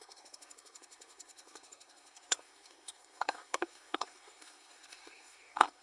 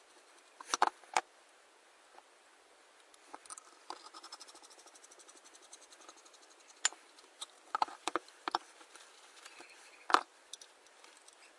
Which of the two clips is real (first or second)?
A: second